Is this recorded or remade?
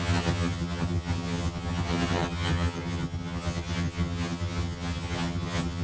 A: remade